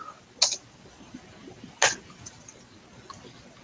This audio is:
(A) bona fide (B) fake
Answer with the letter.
A